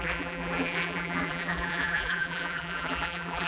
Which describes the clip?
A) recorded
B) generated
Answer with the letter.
B